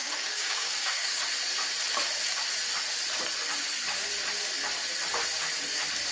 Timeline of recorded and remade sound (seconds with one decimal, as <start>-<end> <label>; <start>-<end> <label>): 0.0-1.2 remade; 1.2-6.1 recorded